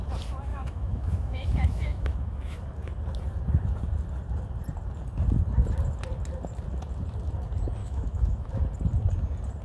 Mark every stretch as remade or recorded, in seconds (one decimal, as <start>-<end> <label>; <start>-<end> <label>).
0.0-0.5 recorded; 0.5-2.6 remade; 2.6-7.8 recorded; 7.8-8.5 remade; 8.5-9.6 recorded